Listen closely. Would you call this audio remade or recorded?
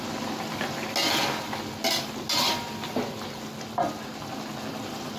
recorded